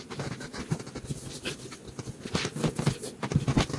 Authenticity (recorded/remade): recorded